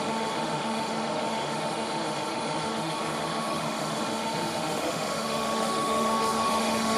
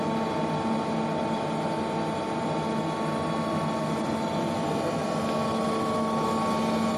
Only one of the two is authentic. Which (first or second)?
second